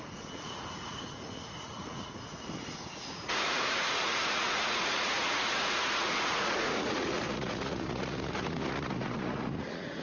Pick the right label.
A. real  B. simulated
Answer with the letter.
B